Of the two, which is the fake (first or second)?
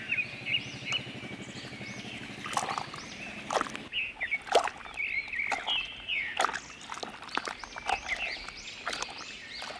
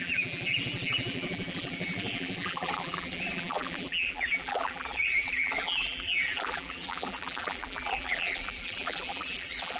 second